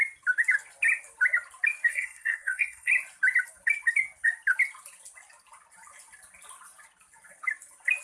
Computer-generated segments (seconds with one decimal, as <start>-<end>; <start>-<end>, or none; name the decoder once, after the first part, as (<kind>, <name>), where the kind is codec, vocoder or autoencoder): 1.9-2.9 (codec, SNAC)